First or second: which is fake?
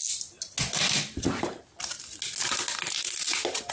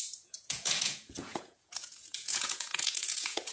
second